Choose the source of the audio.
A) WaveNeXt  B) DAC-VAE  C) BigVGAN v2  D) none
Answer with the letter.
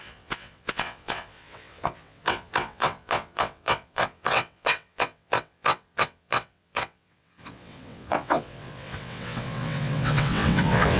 A